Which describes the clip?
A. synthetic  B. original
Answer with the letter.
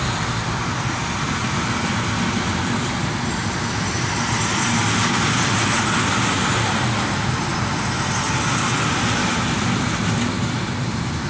B